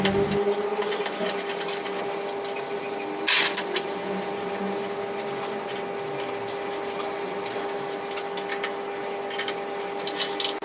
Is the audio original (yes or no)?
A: yes